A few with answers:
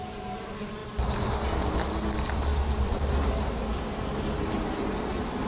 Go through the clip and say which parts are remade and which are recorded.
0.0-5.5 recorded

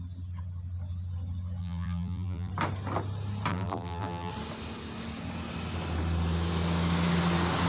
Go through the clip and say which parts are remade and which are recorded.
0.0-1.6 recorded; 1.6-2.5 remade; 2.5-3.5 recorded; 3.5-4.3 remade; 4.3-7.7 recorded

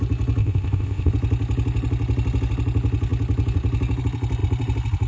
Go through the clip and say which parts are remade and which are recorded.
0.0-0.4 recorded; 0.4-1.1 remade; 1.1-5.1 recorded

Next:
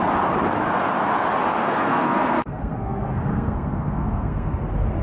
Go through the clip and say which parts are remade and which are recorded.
0.0-1.6 recorded; 1.6-4.6 remade; 4.6-5.0 recorded

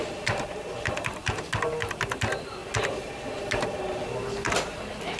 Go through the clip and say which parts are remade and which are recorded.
0.0-5.2 recorded

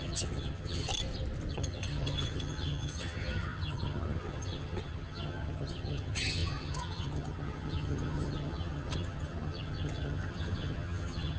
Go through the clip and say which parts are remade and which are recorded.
0.0-0.9 remade; 0.9-1.5 recorded; 1.5-11.4 remade

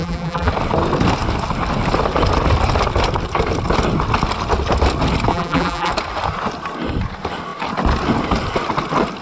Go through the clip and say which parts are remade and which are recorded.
0.0-0.5 remade; 0.5-5.3 recorded; 5.3-5.9 remade; 5.9-9.2 recorded

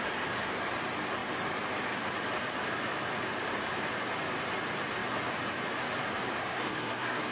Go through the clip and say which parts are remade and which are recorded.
0.0-6.4 recorded; 6.4-7.3 remade